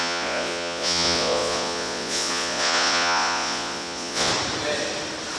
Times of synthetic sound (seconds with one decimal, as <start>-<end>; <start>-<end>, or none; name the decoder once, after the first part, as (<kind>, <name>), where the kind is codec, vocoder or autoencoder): 0.0-4.3 (vocoder, Vocos)